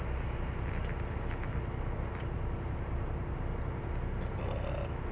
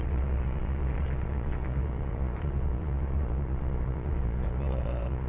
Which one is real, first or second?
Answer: first